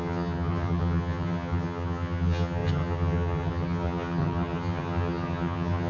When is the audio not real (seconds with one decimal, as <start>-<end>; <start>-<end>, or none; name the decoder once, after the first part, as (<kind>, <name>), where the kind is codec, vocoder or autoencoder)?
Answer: 0.0-5.9 (vocoder, HiFi-GAN)